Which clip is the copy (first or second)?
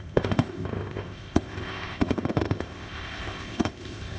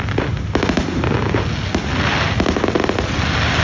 first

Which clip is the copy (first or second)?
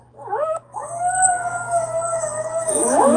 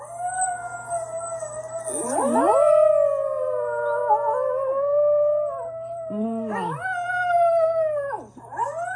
first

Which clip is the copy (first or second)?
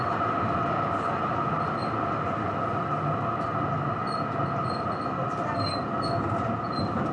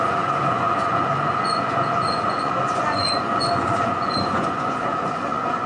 second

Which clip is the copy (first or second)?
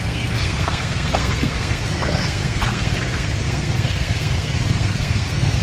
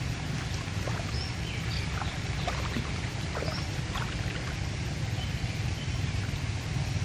first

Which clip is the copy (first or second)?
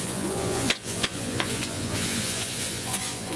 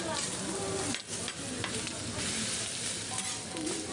first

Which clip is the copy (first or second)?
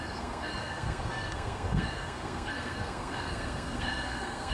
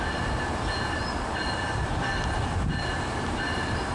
first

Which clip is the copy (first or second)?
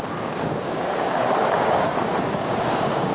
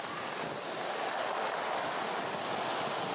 first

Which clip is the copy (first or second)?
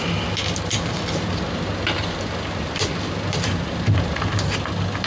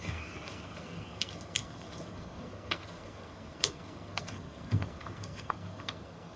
second